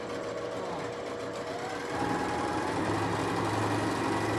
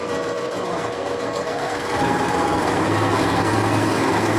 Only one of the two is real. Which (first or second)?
first